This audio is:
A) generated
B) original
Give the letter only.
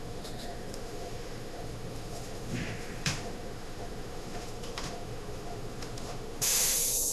A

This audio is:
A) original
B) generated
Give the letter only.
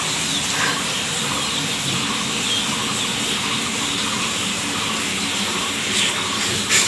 A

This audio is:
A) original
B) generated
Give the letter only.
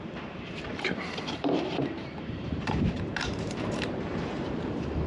B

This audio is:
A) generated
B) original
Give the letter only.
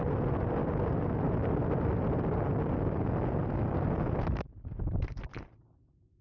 B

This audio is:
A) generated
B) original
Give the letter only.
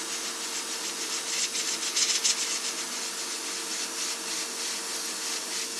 B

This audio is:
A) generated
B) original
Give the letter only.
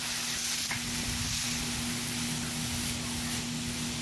B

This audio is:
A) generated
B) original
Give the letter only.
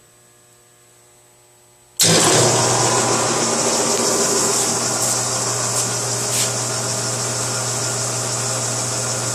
B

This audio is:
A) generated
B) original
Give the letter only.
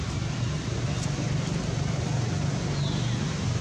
B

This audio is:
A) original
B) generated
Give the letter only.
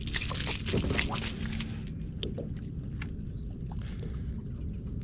A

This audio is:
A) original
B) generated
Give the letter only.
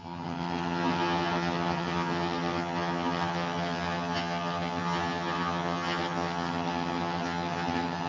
B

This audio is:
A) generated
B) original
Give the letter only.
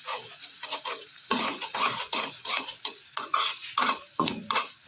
A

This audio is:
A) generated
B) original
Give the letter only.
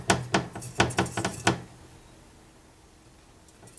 B